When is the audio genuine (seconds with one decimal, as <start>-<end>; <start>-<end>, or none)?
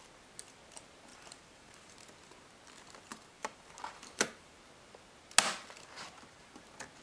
0.0-1.1; 2.0-3.1; 4.6-7.0